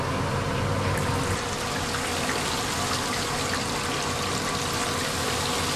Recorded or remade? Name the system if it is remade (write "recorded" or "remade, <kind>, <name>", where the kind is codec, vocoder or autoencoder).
recorded